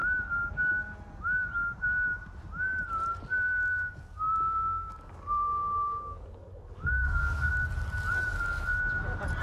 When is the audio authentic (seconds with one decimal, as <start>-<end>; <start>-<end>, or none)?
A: 0.0-3.7; 7.5-9.4